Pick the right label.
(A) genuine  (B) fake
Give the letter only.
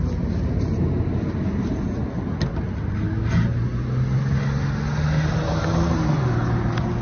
A